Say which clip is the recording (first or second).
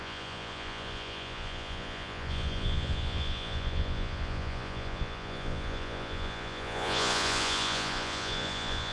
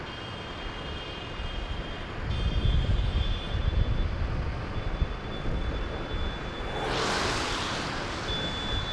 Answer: second